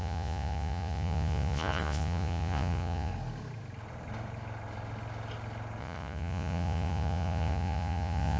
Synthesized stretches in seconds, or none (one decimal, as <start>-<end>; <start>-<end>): 0.0-3.1; 5.8-8.4